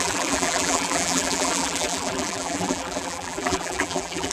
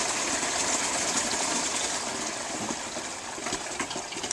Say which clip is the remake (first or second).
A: first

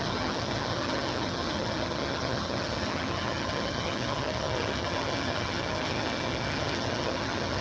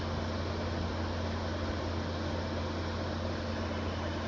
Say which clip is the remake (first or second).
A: first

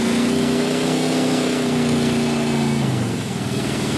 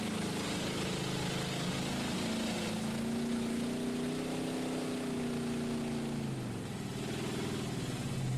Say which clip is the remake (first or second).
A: first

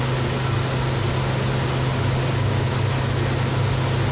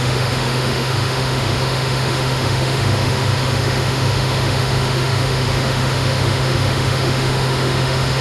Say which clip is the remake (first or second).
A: second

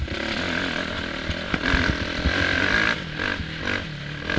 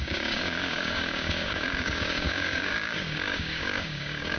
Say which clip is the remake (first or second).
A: second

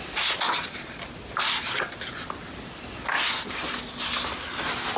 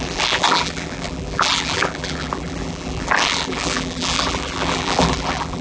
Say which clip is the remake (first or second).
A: second